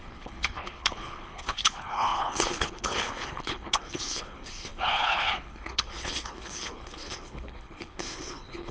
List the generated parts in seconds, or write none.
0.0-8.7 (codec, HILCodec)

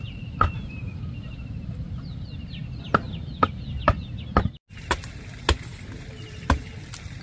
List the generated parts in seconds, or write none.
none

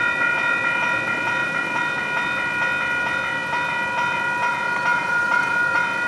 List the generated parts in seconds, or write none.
1.4-2.0 (vocoder, BigVGAN v2); 4.9-5.5